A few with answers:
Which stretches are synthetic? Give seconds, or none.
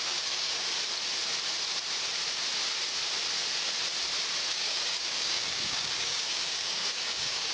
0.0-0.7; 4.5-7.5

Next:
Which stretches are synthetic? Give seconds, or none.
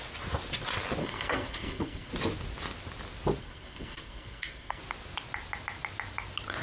1.0-2.1; 3.4-4.8